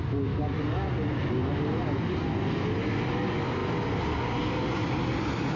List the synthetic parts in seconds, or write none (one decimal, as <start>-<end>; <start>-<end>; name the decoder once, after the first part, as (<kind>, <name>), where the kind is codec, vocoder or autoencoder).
none